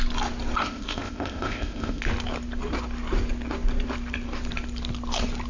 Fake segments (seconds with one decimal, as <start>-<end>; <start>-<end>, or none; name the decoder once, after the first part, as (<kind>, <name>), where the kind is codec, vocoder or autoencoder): 0.6-2.0 (codec, ZipCodec)